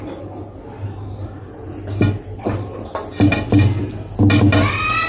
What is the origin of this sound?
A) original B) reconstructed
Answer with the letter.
A